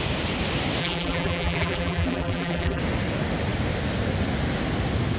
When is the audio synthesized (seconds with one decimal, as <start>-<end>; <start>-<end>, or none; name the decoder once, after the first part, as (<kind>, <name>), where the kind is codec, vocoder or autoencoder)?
0.8-2.8 (vocoder, BigVGAN v2)